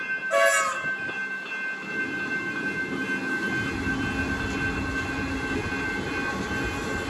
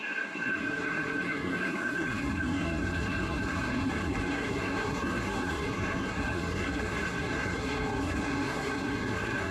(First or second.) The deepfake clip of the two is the second